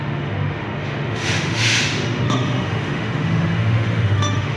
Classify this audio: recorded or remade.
remade